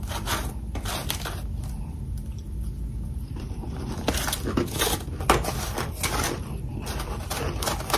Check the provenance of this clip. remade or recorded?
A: recorded